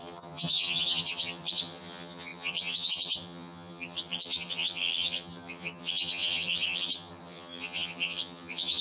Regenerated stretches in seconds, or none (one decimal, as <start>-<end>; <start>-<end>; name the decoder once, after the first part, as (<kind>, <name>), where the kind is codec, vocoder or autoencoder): 0.0-8.8 (vocoder, HiFi-GAN)